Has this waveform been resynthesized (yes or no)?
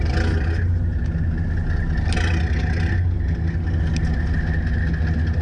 no